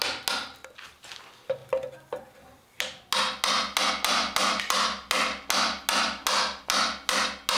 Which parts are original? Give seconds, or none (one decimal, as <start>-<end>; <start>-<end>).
0.0-7.6